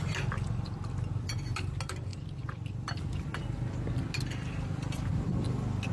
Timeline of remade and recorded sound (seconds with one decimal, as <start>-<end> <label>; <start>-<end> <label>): 0.0-2.1 recorded; 2.1-3.0 remade; 3.0-5.9 recorded